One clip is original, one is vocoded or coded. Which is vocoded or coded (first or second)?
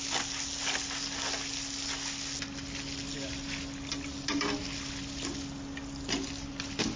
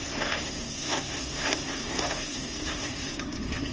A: second